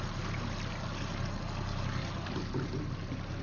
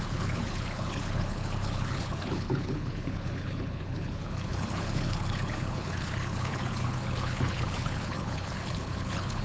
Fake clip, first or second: second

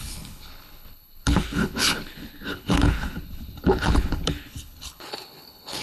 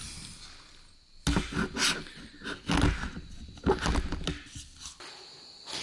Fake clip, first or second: first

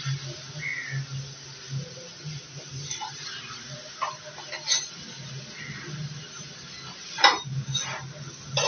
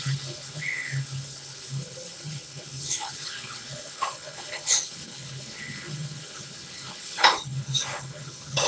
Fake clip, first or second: second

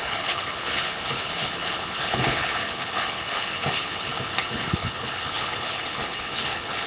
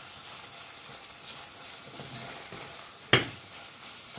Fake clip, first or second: first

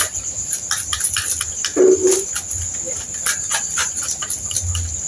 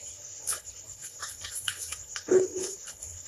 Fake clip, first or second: second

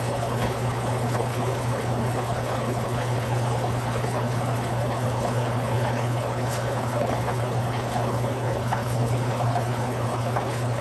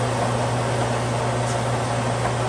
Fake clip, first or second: first